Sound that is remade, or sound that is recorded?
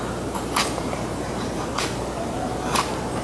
remade